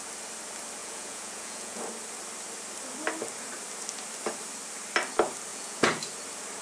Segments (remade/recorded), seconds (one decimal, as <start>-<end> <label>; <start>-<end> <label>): 0.0-0.8 recorded; 0.8-1.8 remade; 1.8-5.5 recorded; 5.5-6.0 remade; 6.0-6.6 recorded